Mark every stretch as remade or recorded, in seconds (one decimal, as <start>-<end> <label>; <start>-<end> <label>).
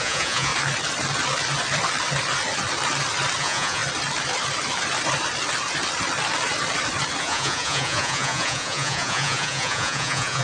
0.0-0.5 remade; 0.5-3.4 recorded; 3.4-3.8 remade; 3.8-7.2 recorded; 7.2-10.4 remade